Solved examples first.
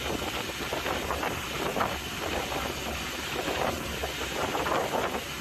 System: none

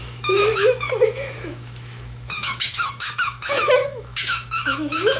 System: autoencoder, DAC-VAE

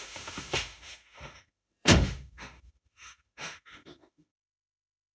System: autoencoder, DAC-VAE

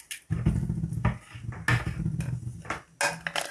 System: none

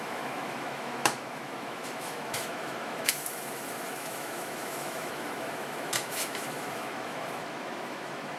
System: autoencoder, DAC-VAE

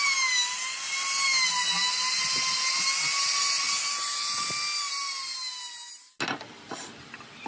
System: none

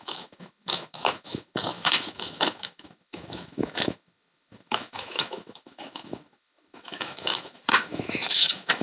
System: autoencoder, DAC-VAE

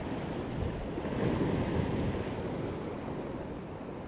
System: none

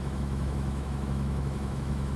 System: autoencoder, DAC-VAE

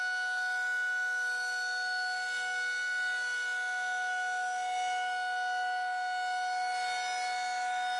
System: none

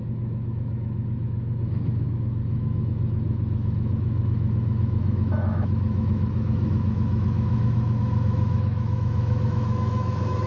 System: autoencoder, DAC-VAE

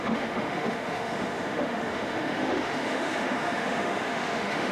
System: autoencoder, DAC-VAE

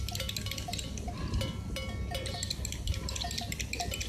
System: none